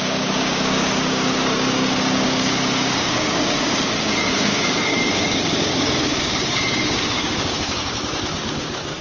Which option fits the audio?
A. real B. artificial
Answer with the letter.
B